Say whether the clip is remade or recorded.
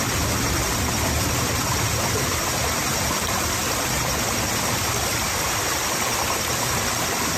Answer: recorded